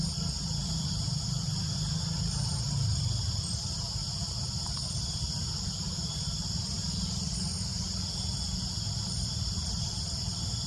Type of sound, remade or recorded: recorded